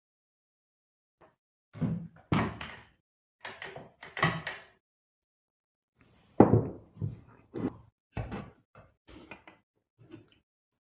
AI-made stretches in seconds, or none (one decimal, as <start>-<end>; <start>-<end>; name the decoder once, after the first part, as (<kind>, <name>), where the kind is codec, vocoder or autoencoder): 2.8-5.0 (vocoder, BigVGAN v2); 5.7-10.6